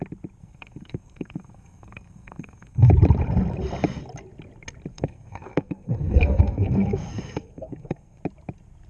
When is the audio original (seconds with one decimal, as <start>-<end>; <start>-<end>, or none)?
0.0-0.4; 2.9-4.9; 8.2-8.9